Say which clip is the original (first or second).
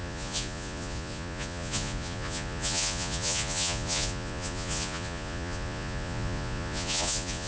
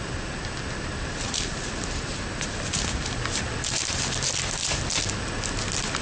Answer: second